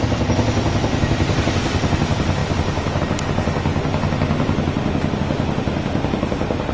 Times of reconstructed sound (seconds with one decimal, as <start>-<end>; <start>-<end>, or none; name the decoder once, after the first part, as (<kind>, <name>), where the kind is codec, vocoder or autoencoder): none